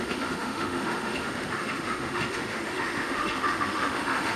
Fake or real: fake